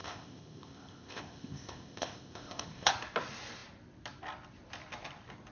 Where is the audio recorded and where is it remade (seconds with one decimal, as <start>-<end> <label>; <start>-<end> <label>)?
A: 0.0-2.9 remade; 2.9-5.5 recorded